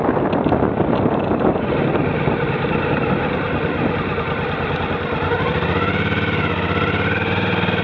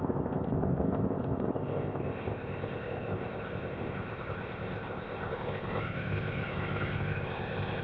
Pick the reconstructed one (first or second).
second